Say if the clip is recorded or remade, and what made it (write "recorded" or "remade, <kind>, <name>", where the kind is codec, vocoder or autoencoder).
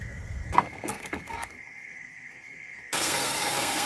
remade, codec, SNAC